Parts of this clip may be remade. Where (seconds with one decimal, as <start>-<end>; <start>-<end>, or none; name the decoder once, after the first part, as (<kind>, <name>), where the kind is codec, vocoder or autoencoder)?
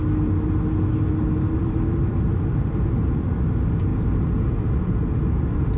1.6-3.5 (vocoder, BigVGAN v2)